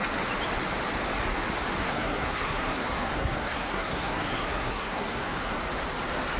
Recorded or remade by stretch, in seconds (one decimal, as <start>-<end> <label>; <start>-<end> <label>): 0.0-1.8 recorded; 1.8-5.6 remade; 5.6-6.4 recorded